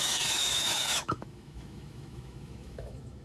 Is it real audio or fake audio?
fake